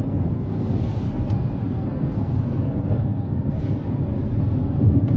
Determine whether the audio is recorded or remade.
remade